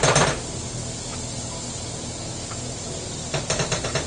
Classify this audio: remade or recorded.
recorded